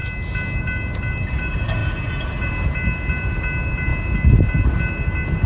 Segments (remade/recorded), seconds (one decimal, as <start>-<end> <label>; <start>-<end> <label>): 0.0-5.5 recorded

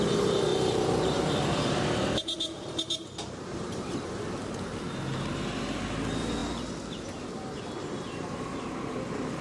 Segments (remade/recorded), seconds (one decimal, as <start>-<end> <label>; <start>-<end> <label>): 0.0-0.5 recorded; 0.5-4.5 remade; 4.5-9.4 recorded

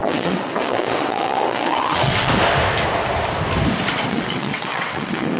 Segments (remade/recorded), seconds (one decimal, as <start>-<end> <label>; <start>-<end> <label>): 0.0-2.3 remade; 2.3-4.1 recorded; 4.1-5.4 remade